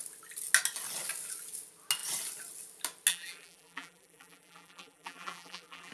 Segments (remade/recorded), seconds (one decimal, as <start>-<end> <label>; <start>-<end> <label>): 0.0-3.1 recorded; 3.1-5.9 remade